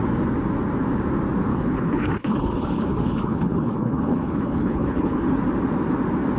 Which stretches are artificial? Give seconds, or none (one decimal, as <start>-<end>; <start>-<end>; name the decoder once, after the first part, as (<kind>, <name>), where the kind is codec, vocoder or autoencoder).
1.5-5.3 (codec, HILCodec)